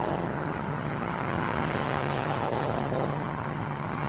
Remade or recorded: remade